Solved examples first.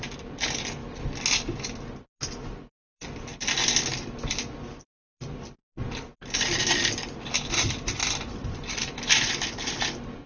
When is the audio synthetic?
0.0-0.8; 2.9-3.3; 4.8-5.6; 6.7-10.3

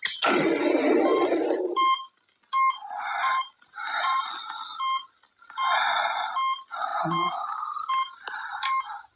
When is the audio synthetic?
1.1-2.2; 3.3-4.2

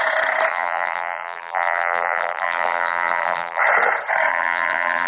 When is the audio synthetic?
0.5-3.6; 4.3-5.1

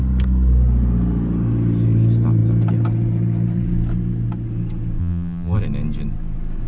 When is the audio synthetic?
5.0-5.6

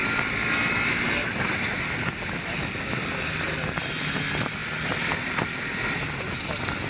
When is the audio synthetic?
none